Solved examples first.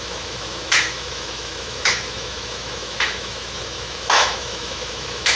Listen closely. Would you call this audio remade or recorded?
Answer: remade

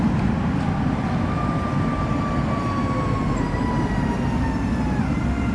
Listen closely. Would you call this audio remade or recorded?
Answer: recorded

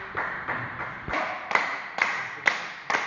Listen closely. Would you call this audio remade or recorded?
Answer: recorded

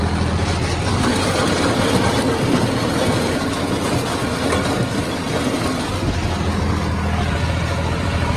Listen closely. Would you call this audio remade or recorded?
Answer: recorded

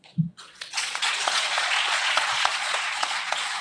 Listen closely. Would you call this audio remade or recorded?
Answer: remade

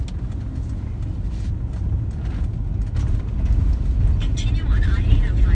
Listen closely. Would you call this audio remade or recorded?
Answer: recorded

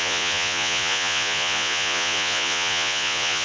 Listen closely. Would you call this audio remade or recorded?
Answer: remade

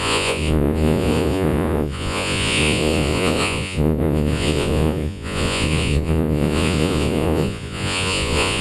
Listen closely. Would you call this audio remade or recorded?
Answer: remade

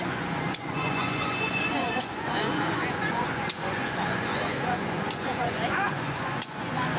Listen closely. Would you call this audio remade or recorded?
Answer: remade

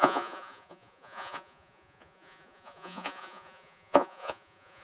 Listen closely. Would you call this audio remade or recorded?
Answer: remade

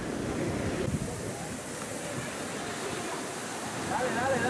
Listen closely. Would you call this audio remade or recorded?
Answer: recorded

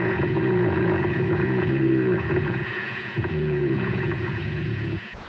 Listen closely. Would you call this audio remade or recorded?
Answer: remade